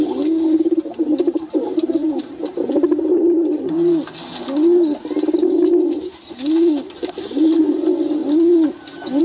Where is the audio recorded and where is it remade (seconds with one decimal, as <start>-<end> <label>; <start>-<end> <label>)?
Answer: 0.0-3.1 recorded; 3.1-3.7 remade; 3.7-9.2 recorded